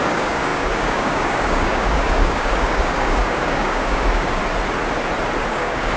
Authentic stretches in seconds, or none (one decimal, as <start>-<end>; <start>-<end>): 4.4-5.5